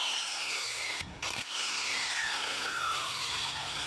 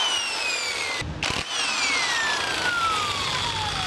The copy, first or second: first